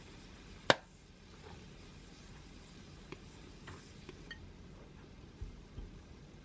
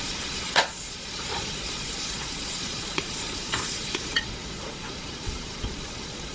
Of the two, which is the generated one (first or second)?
second